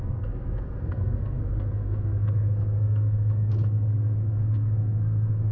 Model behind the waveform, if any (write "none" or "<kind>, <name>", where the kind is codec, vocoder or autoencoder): codec, SNAC